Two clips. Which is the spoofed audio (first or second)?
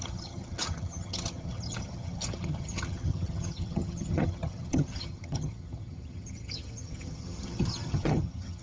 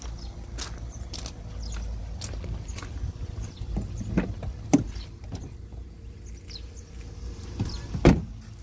first